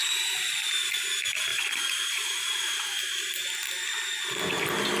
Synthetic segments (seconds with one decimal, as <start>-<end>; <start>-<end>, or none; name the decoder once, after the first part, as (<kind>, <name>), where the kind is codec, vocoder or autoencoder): 1.5-4.2 (vocoder, BigVGAN v2)